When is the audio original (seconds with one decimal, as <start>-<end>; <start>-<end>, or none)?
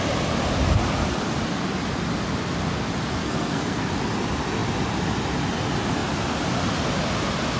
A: 0.0-3.2; 3.9-7.6